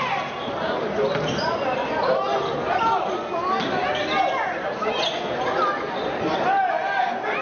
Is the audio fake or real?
real